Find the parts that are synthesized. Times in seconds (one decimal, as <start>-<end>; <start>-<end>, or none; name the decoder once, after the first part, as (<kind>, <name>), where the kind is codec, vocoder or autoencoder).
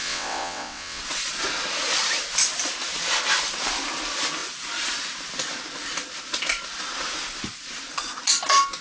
0.0-1.0 (vocoder, WaveNeXt)